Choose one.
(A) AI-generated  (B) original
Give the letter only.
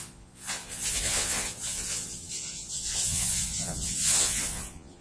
A